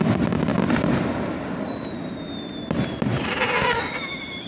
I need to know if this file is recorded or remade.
recorded